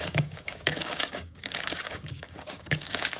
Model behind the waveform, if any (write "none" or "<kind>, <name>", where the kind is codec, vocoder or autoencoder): codec, DAC